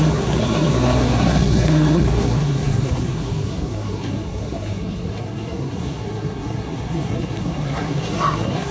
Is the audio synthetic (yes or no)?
yes